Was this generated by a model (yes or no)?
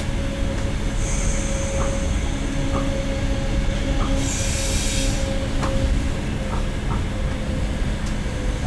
no